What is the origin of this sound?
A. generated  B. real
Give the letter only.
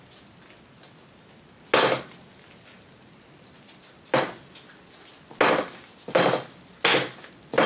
B